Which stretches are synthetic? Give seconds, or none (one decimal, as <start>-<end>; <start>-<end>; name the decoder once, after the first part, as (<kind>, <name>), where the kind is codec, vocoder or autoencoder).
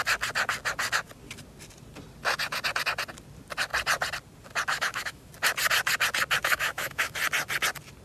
4.7-5.3 (autoencoder, DAC-VAE); 6.4-7.2